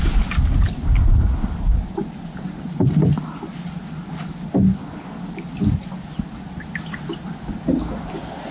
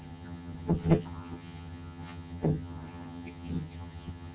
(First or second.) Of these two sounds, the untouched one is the first